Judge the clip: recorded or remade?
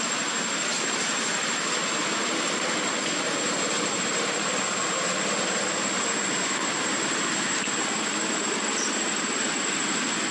recorded